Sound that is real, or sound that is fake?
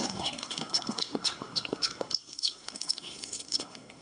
fake